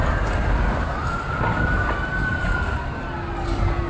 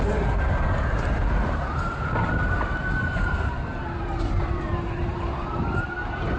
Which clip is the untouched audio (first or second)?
first